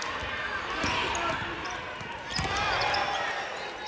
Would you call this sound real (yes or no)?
yes